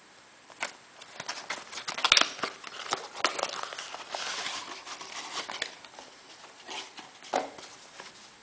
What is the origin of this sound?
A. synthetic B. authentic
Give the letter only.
B